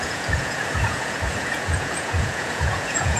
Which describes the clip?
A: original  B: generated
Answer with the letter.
B